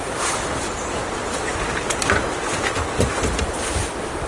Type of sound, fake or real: real